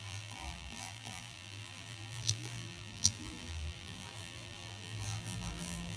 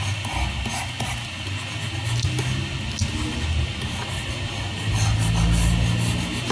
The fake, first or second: first